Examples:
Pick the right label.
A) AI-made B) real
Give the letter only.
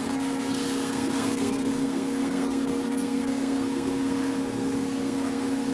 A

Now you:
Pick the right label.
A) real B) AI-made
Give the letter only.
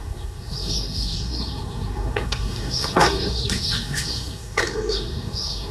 B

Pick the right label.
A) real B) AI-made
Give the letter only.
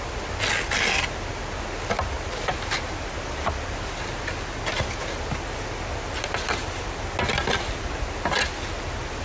A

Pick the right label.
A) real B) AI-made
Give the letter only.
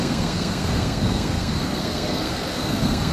B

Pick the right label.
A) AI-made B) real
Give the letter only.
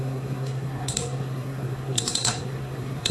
A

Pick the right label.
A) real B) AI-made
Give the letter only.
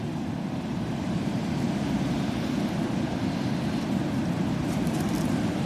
A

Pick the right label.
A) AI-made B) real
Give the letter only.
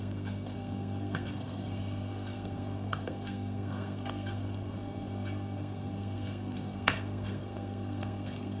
A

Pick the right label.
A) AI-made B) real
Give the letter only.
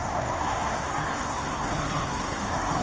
A